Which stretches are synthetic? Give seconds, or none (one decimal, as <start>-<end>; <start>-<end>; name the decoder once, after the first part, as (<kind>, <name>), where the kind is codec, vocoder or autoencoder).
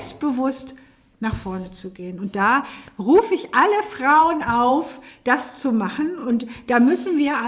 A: 1.2-2.7 (codec, DAC); 4.2-4.7; 6.2-7.5